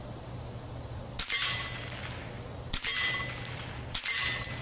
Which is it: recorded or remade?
recorded